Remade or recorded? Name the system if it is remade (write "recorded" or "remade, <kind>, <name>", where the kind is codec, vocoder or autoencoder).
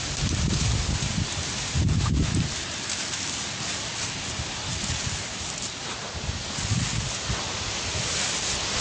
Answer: recorded